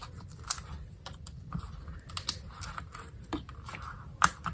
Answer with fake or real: real